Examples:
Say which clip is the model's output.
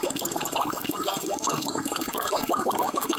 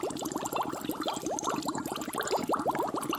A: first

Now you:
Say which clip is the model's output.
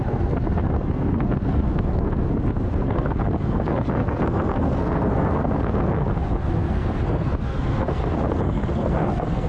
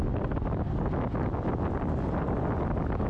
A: first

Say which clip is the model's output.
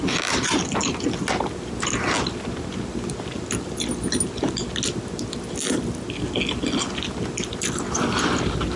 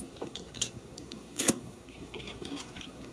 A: second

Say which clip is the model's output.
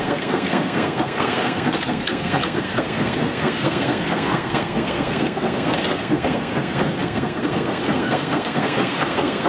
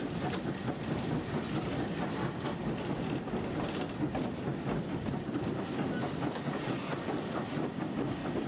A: first